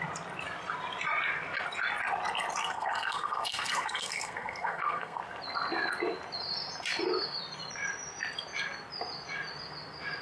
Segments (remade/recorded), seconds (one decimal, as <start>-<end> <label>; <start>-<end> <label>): 0.0-2.6 recorded; 2.6-5.2 remade; 5.2-10.2 recorded